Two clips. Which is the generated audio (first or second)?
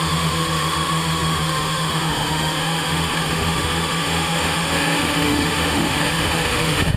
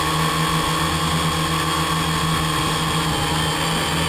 first